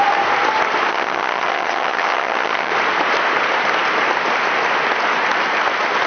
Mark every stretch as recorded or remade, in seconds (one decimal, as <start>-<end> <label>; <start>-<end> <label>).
0.0-0.9 recorded; 0.9-2.7 remade; 2.7-6.1 recorded